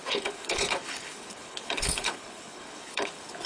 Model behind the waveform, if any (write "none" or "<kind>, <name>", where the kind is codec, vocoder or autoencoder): codec, HILCodec